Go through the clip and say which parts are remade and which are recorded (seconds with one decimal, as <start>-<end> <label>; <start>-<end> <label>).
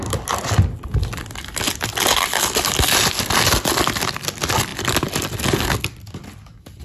0.0-6.8 recorded